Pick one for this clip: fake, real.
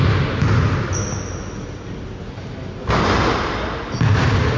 real